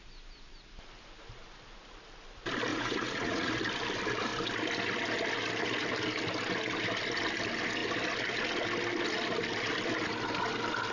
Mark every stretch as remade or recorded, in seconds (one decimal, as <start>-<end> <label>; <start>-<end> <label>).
0.0-2.7 recorded; 2.7-3.5 remade; 3.5-10.9 recorded